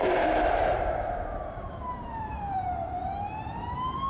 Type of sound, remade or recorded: remade